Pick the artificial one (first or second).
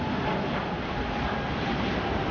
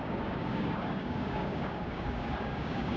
second